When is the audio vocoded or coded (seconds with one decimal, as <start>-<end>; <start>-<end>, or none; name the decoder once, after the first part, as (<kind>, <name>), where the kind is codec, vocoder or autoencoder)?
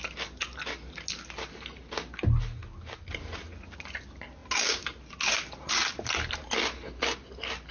none